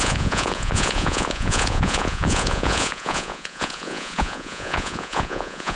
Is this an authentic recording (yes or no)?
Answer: no